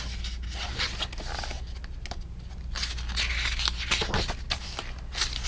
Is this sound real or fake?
real